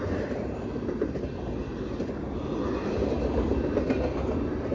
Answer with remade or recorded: recorded